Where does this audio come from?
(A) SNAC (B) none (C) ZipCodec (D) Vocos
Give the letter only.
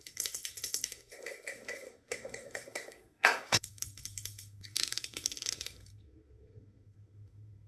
A